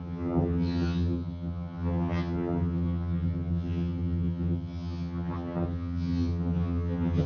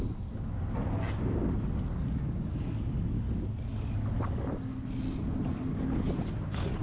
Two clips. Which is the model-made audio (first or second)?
first